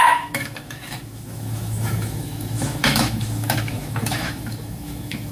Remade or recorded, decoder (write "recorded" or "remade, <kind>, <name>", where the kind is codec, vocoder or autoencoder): remade, autoencoder, DAC-VAE